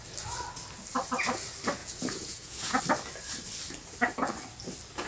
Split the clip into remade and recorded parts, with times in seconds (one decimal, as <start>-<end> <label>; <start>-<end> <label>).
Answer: 0.0-1.8 recorded; 1.8-2.8 remade; 2.8-5.1 recorded